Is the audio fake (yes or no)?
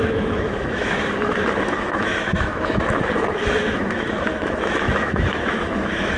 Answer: yes